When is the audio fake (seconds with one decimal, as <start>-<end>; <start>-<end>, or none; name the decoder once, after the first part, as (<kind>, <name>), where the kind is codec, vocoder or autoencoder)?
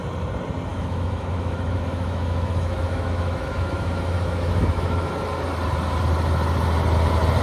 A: 0.7-5.1 (autoencoder, DAC-VAE)